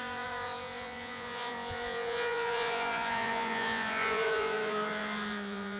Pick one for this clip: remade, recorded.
remade